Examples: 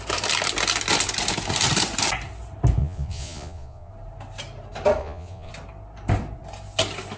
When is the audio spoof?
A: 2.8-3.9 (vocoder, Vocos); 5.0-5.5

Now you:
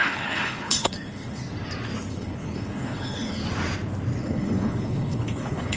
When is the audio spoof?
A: 0.0-1.4 (codec, HILCodec); 2.1-3.4; 4.2-5.8

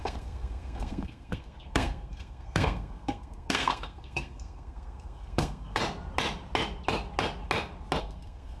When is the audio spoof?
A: 0.0-5.8 (codec, SNAC); 8.0-8.6

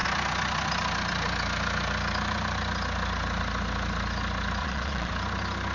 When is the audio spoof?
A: 4.6-5.1 (vocoder, Vocos)

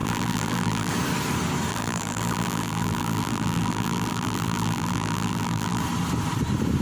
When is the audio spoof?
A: 0.0-0.9 (vocoder, BigVGAN v2); 1.7-5.8

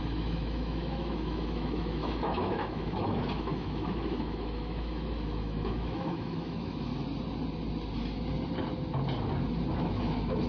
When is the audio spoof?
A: 0.0-6.9 (autoencoder, DAC-VAE); 9.7-10.5

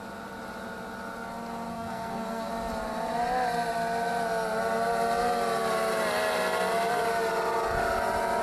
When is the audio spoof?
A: 1.7-2.5 (codec, SNAC)

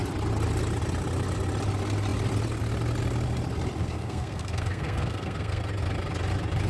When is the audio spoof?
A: 3.8-5.6 (codec, SNAC)